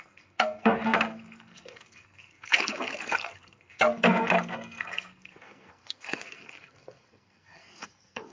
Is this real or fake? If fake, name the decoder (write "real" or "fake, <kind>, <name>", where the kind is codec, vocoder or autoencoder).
fake, codec, SNAC